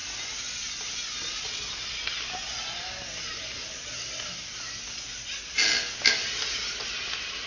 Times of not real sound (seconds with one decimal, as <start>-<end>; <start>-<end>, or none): none